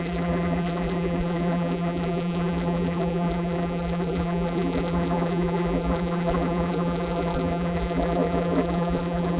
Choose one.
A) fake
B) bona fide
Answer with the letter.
A